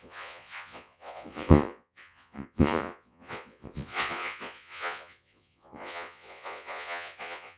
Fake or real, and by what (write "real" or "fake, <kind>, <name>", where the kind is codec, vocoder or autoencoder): fake, vocoder, Vocos